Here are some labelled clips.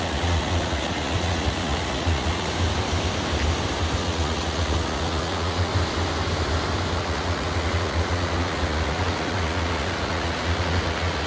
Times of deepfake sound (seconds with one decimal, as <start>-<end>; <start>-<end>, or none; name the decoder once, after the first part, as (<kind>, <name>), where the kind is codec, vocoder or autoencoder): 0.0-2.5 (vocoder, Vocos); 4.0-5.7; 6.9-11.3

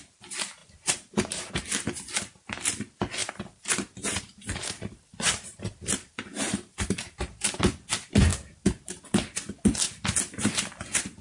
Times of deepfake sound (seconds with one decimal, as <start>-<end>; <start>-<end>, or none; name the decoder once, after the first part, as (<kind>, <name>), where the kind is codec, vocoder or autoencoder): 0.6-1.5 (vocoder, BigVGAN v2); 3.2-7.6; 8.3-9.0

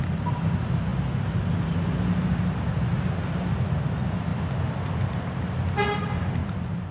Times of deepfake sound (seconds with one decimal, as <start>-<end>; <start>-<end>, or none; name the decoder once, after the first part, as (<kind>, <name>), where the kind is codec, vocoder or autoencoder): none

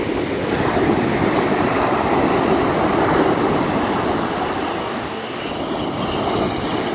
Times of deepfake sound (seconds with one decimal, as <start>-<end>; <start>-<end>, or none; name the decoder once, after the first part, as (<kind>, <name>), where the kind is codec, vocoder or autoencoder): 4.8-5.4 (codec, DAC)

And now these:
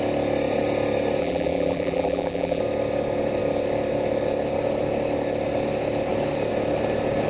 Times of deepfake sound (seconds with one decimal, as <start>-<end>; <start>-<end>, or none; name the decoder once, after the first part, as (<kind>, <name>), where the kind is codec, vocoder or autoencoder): 1.2-2.6 (vocoder, BigVGAN v2)

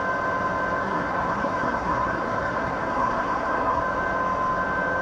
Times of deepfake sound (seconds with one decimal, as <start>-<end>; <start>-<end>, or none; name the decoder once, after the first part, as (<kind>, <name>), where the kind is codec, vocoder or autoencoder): 0.8-3.8 (codec, SNAC)